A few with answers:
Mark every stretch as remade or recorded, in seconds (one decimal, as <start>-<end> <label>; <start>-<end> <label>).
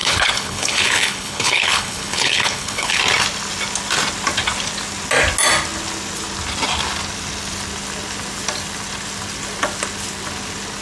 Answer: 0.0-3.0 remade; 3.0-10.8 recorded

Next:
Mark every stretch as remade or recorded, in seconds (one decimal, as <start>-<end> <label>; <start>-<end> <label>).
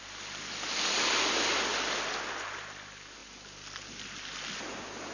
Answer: 0.0-5.1 recorded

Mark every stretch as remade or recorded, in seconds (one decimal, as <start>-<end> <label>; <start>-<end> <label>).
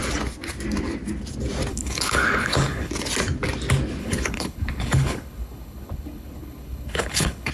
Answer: 0.0-1.7 recorded; 1.7-2.9 remade; 2.9-4.0 recorded; 4.0-7.5 remade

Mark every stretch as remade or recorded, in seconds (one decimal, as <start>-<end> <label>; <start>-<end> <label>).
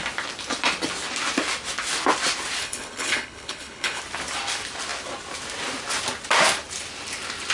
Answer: 0.0-2.6 recorded; 2.6-4.0 remade; 4.0-7.5 recorded